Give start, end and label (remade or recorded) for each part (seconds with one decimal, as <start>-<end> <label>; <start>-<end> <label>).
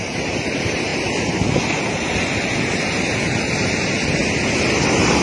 0.0-0.9 remade; 0.9-2.6 recorded; 2.6-4.2 remade; 4.2-5.2 recorded